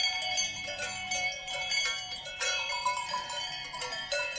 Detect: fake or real fake